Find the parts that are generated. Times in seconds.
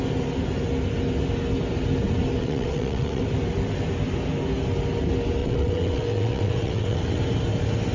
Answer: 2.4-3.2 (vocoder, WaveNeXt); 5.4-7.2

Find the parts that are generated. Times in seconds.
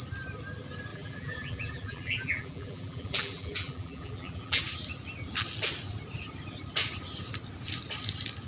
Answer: 0.9-4.6 (vocoder, BigVGAN v2)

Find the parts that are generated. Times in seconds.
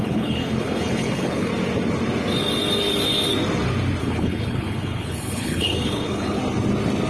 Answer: 0.0-1.5 (codec, HILCodec); 4.0-6.4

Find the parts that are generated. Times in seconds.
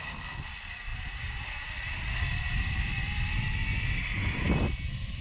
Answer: none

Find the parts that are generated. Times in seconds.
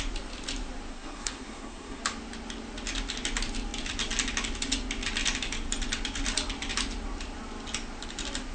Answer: 0.9-2.0 (codec, SNAC)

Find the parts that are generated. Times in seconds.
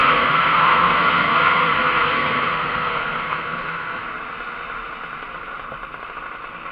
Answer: 0.0-4.0 (codec, SNAC)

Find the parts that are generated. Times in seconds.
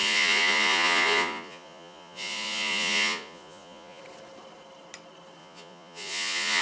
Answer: 0.0-4.0 (vocoder, Vocos); 5.4-6.6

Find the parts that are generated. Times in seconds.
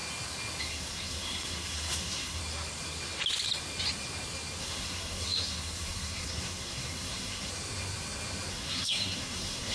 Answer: 0.6-2.4 (codec, SNAC); 4.6-7.5; 8.5-9.7